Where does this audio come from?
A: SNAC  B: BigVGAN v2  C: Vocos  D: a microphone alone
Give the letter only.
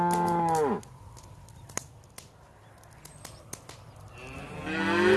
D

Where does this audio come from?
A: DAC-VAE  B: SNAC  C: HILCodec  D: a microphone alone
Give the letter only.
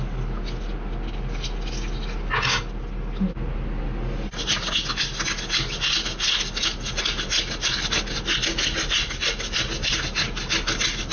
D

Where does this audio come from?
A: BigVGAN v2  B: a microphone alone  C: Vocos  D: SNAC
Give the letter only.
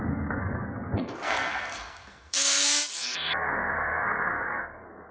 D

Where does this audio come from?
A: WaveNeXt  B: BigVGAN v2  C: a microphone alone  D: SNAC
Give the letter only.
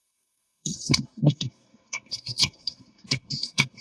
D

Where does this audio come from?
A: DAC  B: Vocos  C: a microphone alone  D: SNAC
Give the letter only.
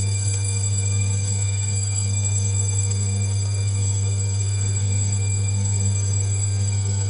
D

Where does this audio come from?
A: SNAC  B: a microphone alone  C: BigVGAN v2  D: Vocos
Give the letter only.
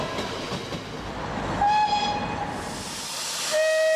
B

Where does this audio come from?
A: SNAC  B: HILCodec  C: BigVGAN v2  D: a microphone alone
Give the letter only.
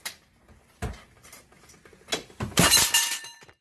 D